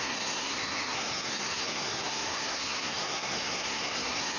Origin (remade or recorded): remade